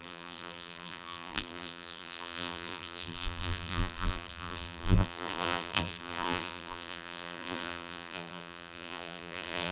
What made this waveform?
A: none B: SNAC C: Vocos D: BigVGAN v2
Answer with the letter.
D